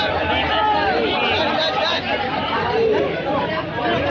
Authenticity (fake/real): real